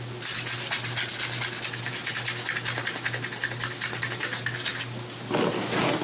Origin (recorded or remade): recorded